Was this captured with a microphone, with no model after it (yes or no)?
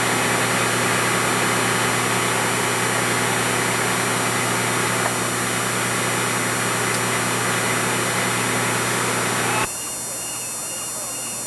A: yes